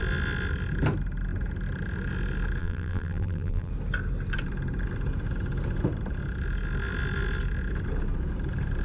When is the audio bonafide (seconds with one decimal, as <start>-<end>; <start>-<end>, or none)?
0.0-2.6; 3.7-8.8